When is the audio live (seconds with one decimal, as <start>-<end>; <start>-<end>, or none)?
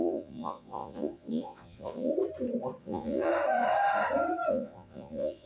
2.1-2.8; 3.3-4.5